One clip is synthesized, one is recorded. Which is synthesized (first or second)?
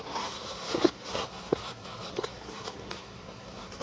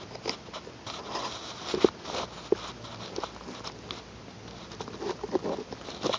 first